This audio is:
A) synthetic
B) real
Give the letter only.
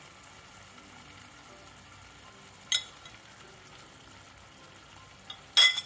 B